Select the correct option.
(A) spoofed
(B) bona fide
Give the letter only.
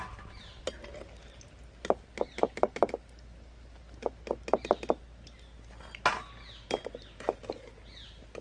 B